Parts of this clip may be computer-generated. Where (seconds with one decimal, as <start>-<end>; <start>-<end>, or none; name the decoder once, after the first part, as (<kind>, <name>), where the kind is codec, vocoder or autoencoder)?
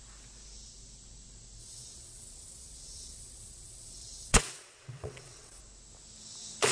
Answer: 1.6-5.6 (vocoder, WaveNeXt)